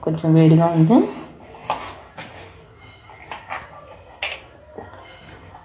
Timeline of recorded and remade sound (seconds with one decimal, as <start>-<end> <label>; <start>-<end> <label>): 0.0-5.6 recorded